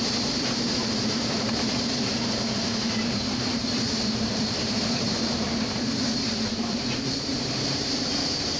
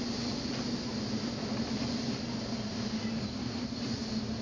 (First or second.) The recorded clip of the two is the second